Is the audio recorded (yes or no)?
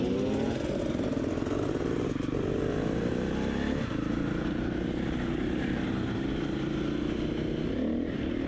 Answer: yes